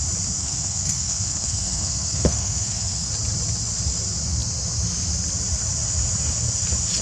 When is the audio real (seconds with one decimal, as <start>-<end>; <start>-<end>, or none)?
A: 0.0-0.4; 3.1-7.0